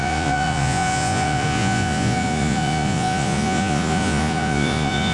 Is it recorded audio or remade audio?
remade